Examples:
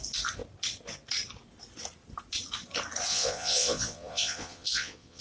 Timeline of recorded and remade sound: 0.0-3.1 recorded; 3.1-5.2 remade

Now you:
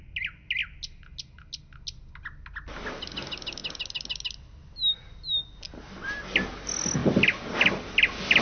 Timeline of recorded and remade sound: 0.0-8.4 recorded

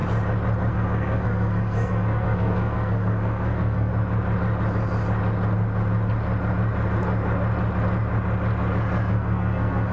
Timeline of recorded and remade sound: 0.0-0.7 recorded; 0.7-3.9 remade; 3.9-9.1 recorded; 9.1-9.9 remade

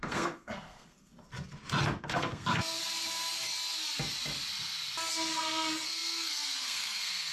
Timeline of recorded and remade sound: 0.0-1.3 remade; 1.3-2.0 recorded; 2.0-2.8 remade; 2.8-5.1 recorded; 5.1-7.3 remade

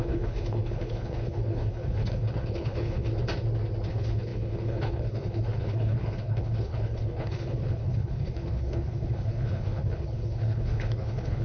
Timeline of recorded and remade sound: 0.0-3.1 remade; 3.1-3.9 recorded; 3.9-11.4 remade

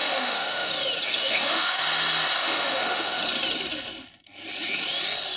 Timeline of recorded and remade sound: 0.0-0.7 remade; 0.7-1.1 recorded; 1.1-1.8 remade; 1.8-2.4 recorded; 2.4-3.2 remade; 3.2-5.4 recorded

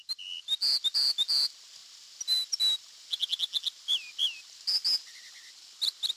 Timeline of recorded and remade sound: 0.0-6.2 recorded